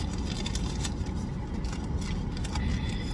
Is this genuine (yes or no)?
yes